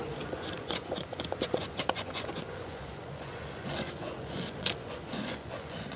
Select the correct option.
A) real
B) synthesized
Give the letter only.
B